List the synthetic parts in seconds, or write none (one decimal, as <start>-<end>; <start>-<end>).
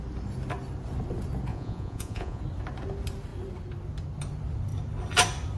1.5-2.4